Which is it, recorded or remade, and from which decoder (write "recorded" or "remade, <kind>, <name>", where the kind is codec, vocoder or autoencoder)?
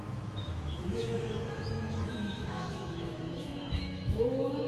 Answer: remade, autoencoder, DAC-VAE